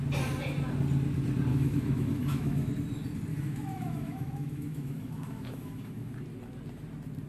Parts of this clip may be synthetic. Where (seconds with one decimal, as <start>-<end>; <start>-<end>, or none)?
1.5-2.7; 3.3-6.1